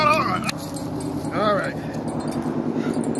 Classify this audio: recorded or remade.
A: recorded